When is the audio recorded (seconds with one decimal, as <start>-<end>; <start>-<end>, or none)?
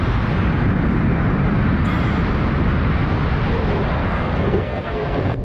0.0-4.0